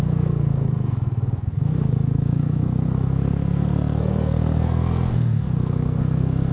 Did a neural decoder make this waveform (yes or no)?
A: yes